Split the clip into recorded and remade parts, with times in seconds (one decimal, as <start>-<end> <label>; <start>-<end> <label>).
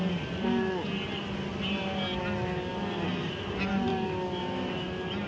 0.0-5.3 recorded